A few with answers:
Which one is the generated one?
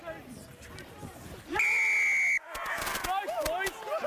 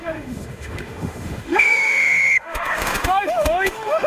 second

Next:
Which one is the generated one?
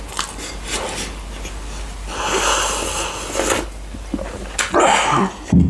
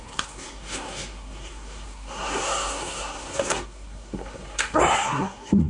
second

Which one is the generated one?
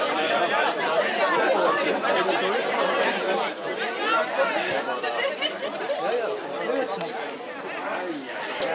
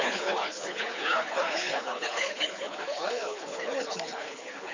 second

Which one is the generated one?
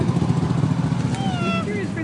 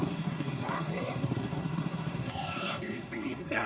second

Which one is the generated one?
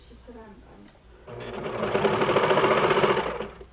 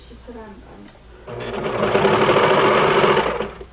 first